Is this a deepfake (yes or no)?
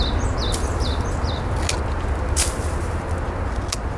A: no